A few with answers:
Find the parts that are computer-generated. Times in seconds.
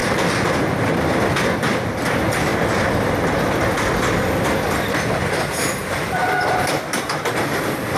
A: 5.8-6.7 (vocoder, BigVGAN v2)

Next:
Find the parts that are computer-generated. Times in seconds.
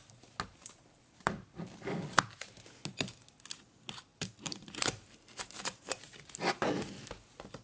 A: 0.5-1.3 (vocoder, BigVGAN v2); 4.1-6.0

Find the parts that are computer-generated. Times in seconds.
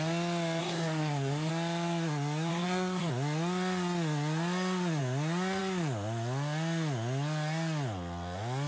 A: 0.6-1.5 (codec, SNAC); 2.5-3.1